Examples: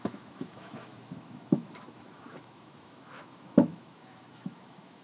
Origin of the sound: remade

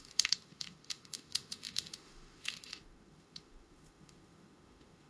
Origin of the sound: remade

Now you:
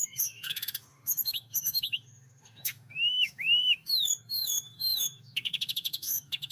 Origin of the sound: remade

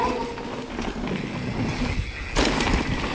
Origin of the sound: recorded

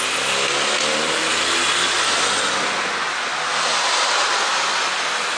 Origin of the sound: recorded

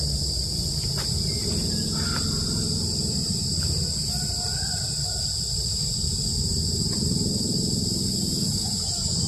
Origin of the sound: recorded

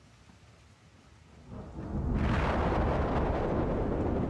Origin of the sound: recorded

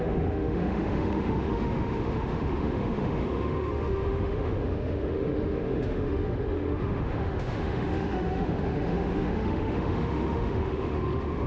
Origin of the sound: remade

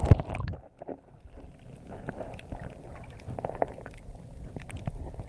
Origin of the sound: recorded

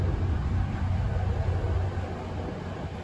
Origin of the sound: recorded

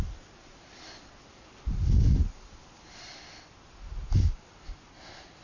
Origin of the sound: recorded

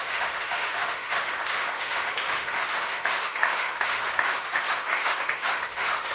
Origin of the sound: remade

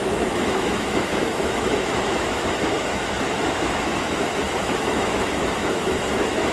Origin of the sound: remade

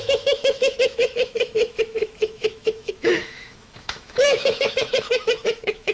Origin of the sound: remade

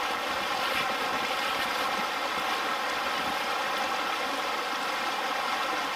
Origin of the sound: recorded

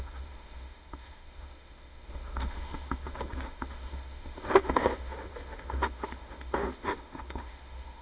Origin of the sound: remade